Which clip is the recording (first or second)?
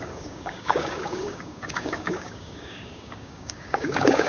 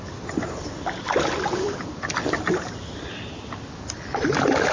second